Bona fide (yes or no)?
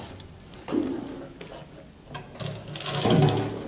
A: yes